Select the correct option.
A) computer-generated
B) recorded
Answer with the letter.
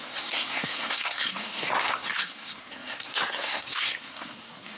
A